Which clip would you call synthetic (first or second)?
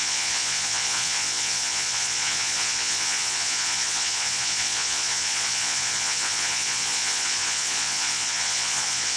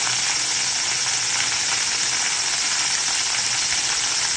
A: first